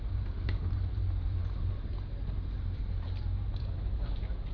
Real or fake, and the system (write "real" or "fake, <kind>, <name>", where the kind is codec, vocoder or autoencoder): fake, vocoder, BigVGAN v2